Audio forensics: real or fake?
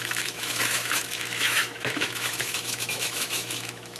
fake